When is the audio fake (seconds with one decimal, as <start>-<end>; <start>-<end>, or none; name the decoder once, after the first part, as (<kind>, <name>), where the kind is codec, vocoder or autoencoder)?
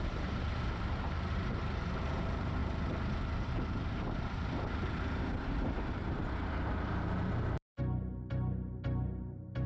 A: 0.0-2.6 (vocoder, BigVGAN v2); 3.6-9.7